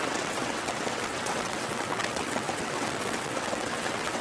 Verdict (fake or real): fake